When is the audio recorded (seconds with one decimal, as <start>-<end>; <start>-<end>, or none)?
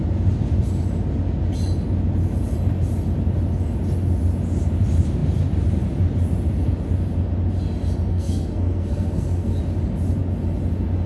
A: 0.0-8.1; 9.6-11.1